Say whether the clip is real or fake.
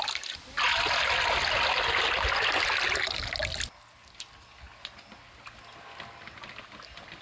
real